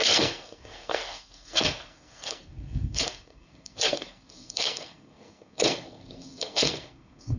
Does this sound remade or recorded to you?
remade